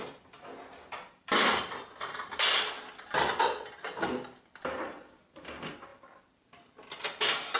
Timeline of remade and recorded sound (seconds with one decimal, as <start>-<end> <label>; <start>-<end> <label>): 0.0-7.6 recorded